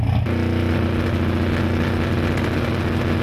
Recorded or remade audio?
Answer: recorded